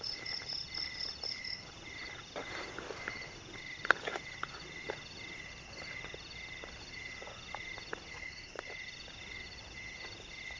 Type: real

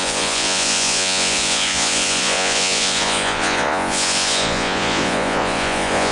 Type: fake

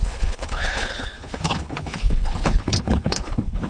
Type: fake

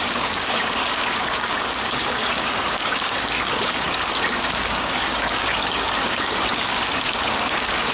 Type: fake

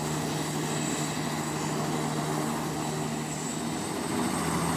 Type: real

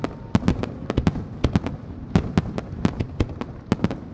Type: real